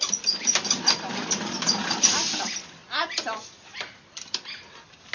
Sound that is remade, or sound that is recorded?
recorded